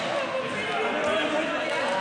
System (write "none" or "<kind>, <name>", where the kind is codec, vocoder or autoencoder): none